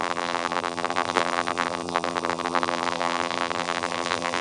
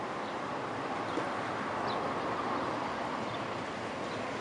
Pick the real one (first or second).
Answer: second